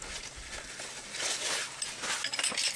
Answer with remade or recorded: recorded